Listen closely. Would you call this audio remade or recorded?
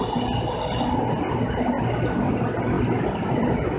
recorded